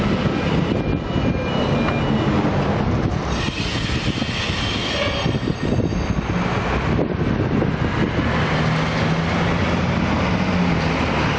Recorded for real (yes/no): yes